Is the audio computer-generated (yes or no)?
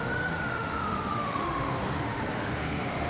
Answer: yes